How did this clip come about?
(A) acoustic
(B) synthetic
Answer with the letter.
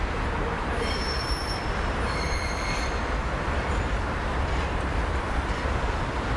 B